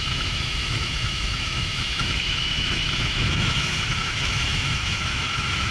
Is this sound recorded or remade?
remade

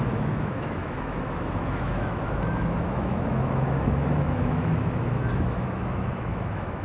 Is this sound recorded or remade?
remade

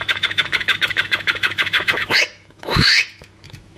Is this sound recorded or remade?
remade